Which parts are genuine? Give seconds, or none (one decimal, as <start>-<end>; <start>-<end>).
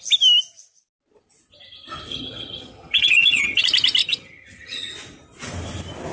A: 0.0-2.1; 3.6-4.0; 4.9-6.1